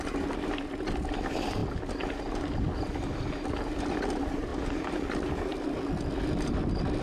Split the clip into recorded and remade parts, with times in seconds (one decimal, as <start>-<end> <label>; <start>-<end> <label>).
0.0-5.5 recorded; 5.5-6.5 remade; 6.5-7.0 recorded